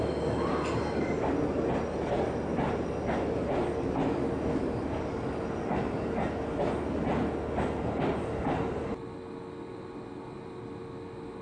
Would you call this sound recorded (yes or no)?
yes